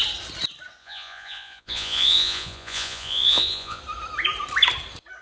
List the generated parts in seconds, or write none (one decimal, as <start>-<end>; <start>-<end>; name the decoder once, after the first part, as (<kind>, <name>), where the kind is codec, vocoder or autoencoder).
0.8-3.8 (vocoder, Vocos)